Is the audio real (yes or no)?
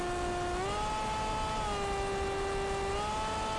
yes